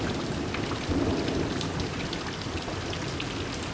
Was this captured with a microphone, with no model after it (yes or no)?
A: yes